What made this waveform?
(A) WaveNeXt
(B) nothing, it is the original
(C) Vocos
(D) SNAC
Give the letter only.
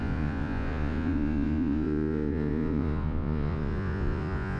C